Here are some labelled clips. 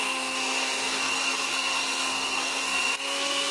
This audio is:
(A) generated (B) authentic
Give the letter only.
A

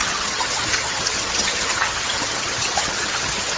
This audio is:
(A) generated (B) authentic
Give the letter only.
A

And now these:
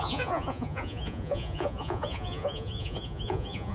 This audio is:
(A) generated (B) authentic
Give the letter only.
A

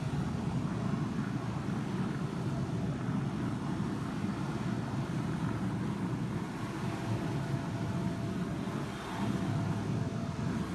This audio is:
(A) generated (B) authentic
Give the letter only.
B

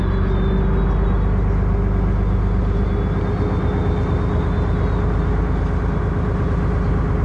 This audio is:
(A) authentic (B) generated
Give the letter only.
A